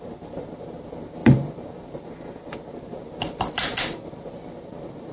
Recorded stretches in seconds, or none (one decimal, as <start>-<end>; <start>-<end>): none